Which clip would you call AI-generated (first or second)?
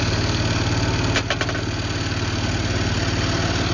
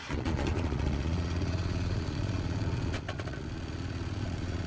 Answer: second